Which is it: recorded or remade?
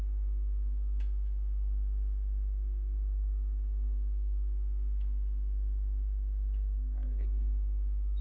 remade